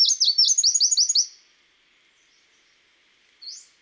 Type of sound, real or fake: real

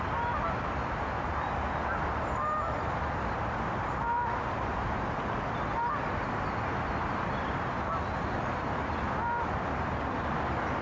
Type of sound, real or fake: real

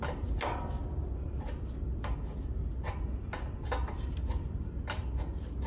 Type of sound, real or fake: real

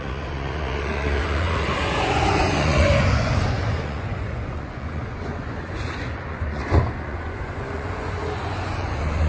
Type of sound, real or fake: fake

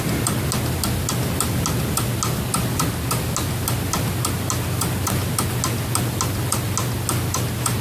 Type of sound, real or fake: real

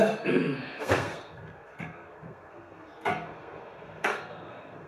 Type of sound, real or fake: fake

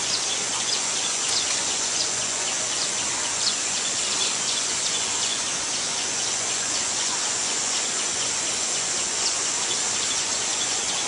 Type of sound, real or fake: fake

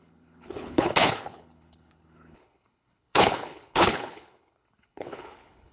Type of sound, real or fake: fake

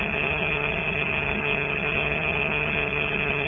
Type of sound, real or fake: fake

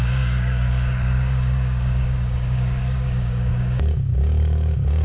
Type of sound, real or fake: fake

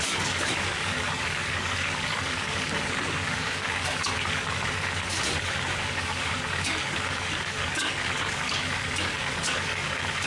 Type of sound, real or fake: fake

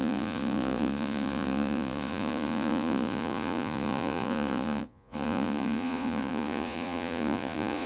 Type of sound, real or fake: fake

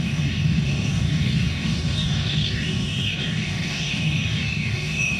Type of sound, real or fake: fake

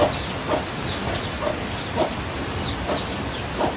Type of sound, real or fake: real